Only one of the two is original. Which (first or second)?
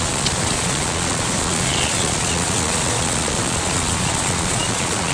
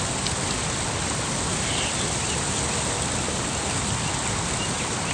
second